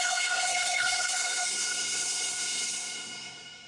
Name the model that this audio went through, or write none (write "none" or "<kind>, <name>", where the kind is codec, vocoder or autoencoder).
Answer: codec, SNAC